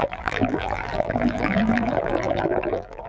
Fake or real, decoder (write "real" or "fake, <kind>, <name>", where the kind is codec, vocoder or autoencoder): fake, vocoder, BigVGAN v2